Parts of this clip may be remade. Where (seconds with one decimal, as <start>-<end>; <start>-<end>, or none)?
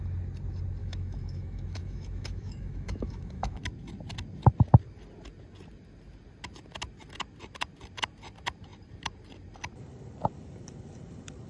0.8-3.6